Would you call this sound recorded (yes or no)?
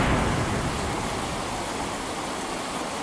yes